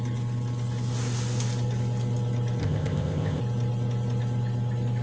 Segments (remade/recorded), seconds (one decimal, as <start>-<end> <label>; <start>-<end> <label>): 0.0-2.6 recorded; 2.6-3.4 remade; 3.4-5.0 recorded